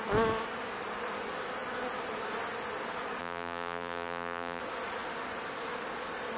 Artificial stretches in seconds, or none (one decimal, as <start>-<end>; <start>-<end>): 3.2-4.6